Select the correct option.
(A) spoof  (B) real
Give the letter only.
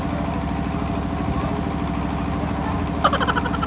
B